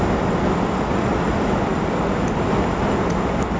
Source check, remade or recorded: recorded